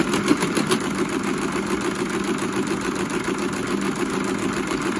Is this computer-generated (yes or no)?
no